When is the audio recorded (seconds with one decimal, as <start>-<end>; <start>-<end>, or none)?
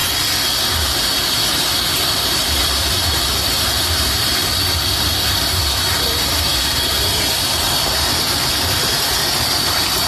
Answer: 0.0-0.7; 4.4-5.0